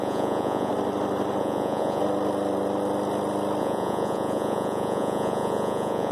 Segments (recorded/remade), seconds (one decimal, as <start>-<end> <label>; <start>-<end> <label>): 0.0-0.7 remade; 0.7-1.4 recorded; 1.4-2.0 remade; 2.0-3.6 recorded; 3.6-6.1 remade